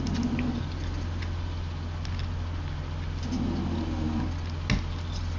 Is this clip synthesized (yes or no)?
no